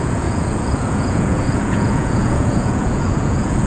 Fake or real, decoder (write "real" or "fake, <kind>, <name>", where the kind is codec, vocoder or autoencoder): fake, vocoder, Vocos